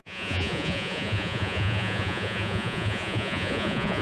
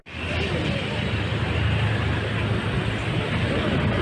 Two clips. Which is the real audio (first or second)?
second